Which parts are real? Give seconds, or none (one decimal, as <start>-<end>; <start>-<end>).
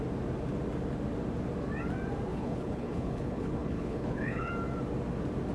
0.0-2.3; 4.5-5.5